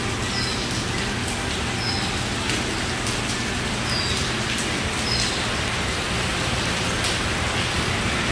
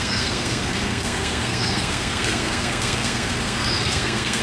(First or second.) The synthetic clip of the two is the second